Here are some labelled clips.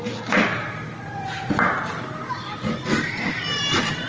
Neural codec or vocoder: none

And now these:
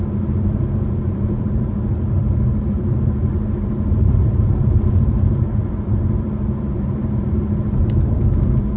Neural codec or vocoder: vocoder, BigVGAN v2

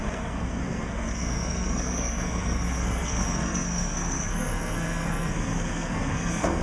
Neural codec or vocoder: codec, SNAC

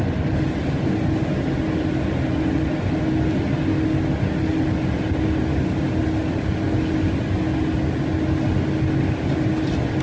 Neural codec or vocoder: none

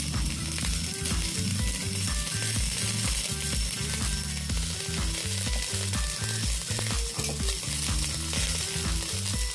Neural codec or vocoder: none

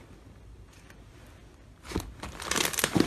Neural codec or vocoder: none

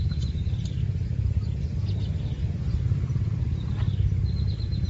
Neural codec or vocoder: vocoder, BigVGAN v2